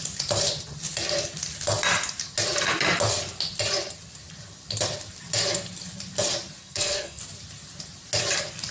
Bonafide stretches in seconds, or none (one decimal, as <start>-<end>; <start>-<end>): 0.0-6.6; 7.2-8.7